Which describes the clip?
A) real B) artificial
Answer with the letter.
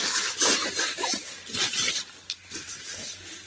B